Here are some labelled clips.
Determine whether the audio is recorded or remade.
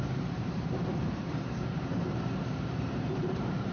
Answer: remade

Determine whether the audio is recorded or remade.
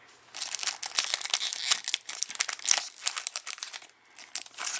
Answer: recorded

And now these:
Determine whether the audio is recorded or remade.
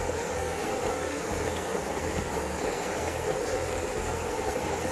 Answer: remade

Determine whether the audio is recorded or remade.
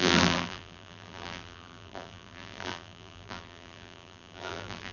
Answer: remade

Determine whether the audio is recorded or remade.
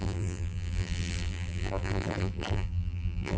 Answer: remade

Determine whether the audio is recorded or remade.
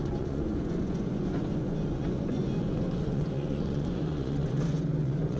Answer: remade